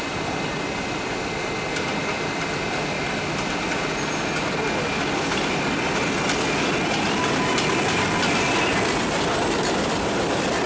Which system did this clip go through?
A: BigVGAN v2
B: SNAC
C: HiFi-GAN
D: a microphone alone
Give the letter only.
D